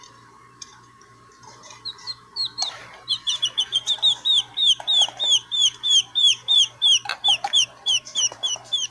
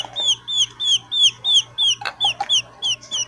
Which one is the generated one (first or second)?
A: first